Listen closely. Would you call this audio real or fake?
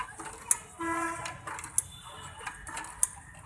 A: real